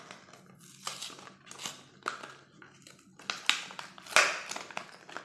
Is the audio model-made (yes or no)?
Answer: no